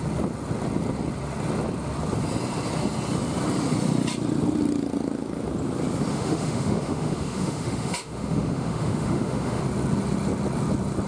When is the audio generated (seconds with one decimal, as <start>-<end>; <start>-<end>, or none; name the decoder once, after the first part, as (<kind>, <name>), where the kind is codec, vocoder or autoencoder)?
6.1-9.6 (autoencoder, DAC-VAE)